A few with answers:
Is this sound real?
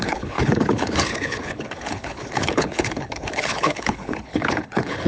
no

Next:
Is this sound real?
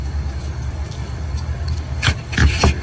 no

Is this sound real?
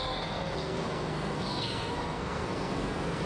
no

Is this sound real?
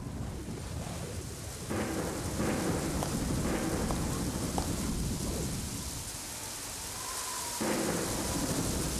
yes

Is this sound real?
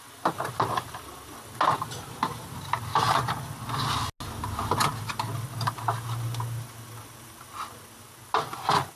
yes